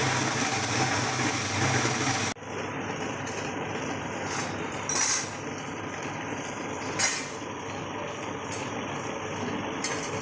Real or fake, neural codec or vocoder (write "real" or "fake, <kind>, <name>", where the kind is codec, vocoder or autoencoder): real